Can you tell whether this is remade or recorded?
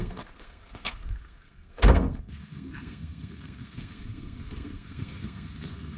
remade